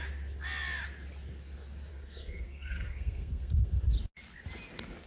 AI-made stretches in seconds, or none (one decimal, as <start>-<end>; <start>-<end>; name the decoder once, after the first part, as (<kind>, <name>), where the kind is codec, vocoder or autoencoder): 1.9-3.8 (codec, SNAC)